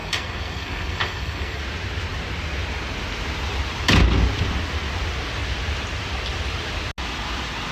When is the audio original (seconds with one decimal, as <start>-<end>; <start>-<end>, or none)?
1.6-7.7